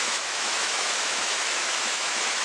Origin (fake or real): fake